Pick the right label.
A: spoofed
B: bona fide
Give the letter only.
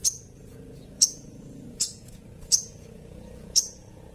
A